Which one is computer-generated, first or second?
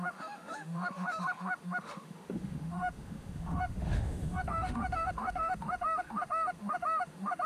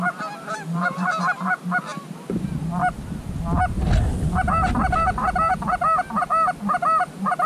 first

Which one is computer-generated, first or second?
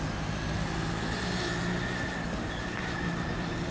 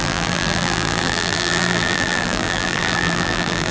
second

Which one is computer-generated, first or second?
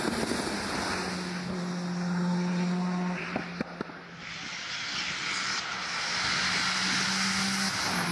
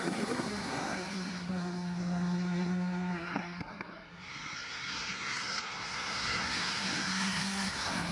second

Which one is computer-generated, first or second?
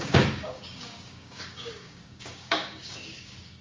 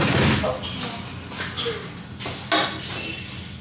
first